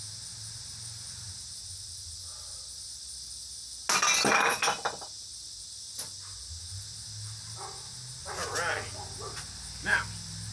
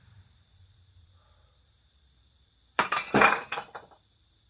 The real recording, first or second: first